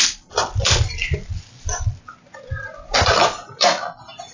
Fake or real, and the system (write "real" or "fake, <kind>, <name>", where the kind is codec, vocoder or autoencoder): real